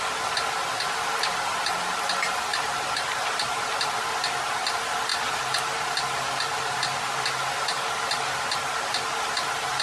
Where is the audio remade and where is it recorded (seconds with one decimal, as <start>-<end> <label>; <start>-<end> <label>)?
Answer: 0.0-2.5 recorded; 2.5-3.7 remade; 3.7-5.1 recorded; 5.1-8.3 remade; 8.3-9.8 recorded